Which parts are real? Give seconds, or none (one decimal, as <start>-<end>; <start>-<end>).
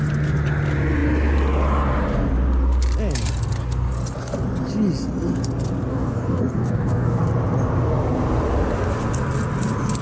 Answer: 0.0-5.9; 7.2-10.0